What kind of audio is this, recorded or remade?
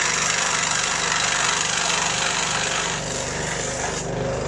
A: recorded